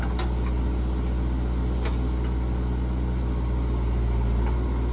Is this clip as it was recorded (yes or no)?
yes